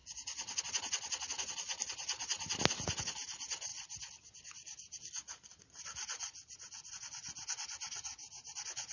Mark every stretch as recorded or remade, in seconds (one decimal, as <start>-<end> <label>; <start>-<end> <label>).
0.0-8.9 recorded